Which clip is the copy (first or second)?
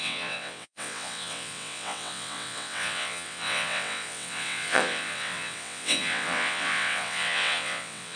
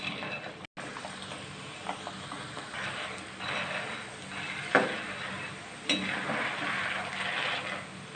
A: first